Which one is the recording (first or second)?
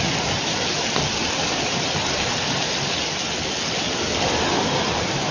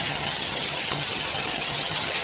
first